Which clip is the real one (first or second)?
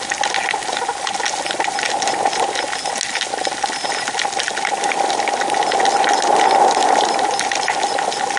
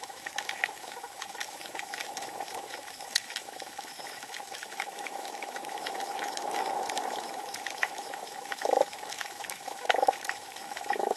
first